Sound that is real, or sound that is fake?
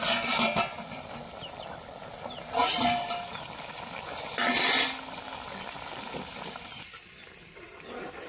real